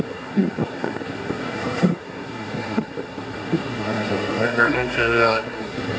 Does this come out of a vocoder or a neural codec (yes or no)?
yes